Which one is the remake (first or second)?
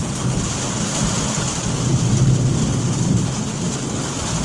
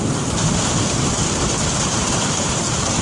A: second